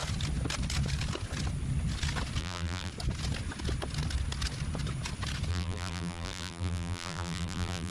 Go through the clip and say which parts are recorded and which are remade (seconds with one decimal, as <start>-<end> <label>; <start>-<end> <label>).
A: 0.0-2.4 recorded; 2.4-2.9 remade; 2.9-5.5 recorded; 5.5-7.9 remade